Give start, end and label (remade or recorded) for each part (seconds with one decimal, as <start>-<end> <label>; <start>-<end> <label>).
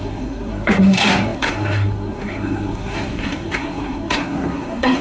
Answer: 0.0-5.0 remade